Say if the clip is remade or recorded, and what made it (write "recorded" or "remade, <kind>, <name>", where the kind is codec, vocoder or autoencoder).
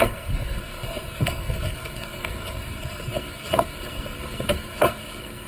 remade, codec, SNAC